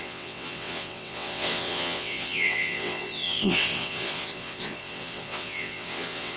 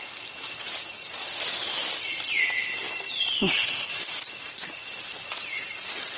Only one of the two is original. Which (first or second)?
second